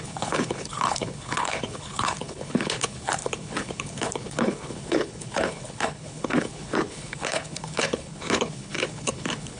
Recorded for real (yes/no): no